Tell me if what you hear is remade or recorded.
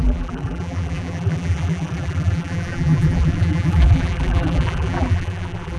remade